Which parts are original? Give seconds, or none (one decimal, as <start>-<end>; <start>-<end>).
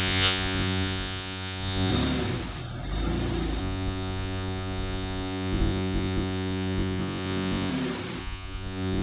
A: 1.9-3.6; 7.7-8.2